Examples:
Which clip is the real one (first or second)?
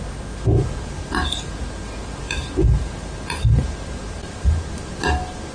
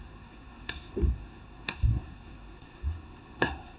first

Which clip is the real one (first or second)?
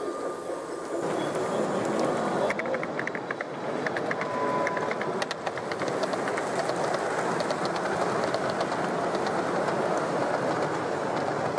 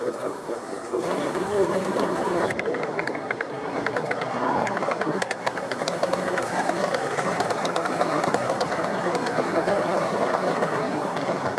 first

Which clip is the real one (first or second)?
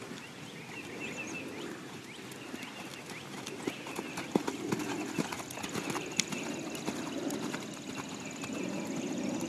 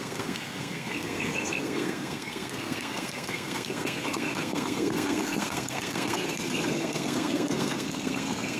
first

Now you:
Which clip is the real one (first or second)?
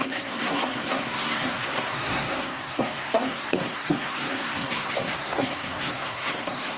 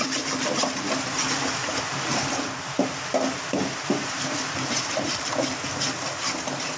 second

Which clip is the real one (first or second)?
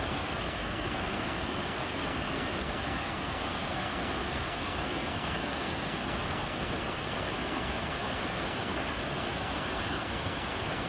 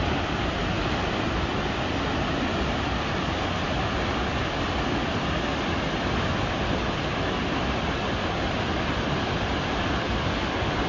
second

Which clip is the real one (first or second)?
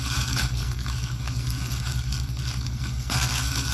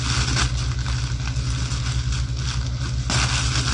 second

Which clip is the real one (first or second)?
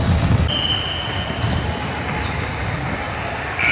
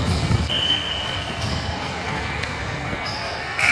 first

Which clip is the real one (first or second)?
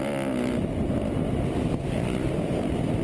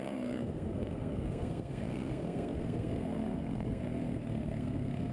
first